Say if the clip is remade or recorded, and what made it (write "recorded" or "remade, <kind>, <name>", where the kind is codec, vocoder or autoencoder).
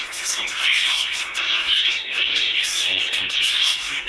remade, codec, SNAC